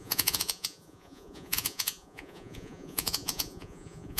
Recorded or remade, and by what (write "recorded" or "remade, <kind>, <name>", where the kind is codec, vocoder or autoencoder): remade, vocoder, Vocos